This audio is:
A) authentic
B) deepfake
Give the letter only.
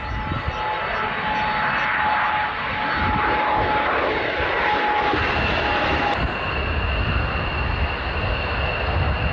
A